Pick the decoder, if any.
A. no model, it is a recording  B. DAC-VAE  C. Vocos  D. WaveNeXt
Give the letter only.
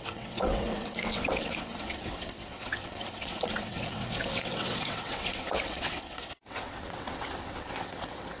D